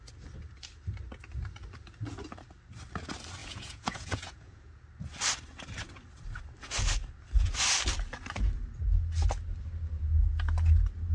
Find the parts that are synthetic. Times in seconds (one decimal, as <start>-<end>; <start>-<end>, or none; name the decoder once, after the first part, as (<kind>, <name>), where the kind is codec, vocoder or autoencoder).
3.4-4.8 (vocoder, Vocos)